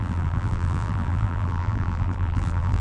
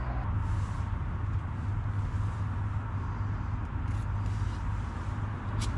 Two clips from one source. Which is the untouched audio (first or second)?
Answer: second